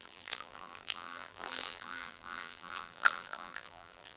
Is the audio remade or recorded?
remade